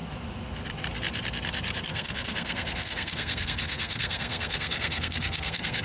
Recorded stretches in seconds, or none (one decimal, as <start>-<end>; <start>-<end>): 0.0-1.9